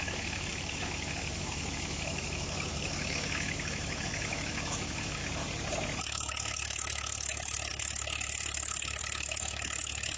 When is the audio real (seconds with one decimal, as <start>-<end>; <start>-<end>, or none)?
5.2-6.0